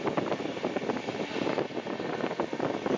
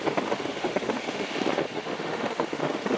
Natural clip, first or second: first